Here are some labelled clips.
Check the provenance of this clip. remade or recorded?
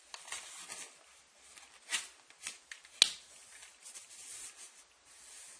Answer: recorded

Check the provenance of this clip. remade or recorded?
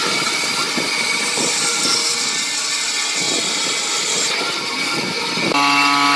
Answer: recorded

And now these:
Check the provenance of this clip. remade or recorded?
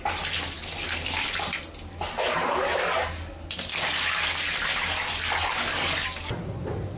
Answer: recorded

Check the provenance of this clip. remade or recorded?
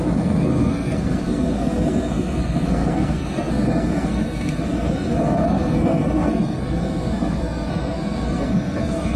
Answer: remade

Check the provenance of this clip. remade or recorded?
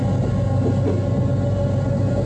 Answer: recorded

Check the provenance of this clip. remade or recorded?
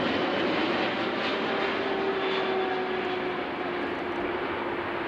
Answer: recorded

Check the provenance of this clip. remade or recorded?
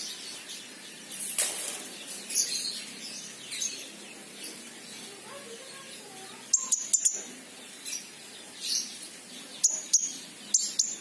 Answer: recorded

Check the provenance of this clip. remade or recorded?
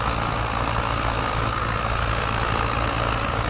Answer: recorded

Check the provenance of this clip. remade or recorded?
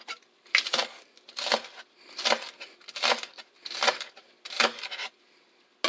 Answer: recorded